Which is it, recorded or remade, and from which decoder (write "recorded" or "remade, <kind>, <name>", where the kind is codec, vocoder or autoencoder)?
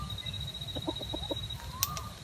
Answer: recorded